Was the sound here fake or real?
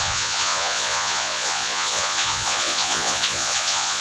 fake